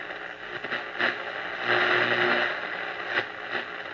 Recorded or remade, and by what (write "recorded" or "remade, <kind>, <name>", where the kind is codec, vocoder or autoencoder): recorded